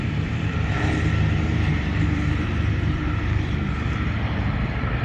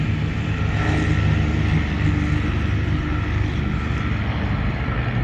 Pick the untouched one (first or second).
second